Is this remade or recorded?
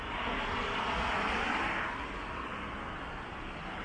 recorded